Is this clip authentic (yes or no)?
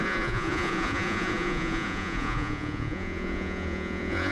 no